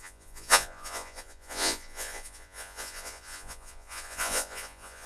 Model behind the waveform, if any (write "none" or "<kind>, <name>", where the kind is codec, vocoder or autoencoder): vocoder, Vocos